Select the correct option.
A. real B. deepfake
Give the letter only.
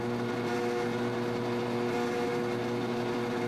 A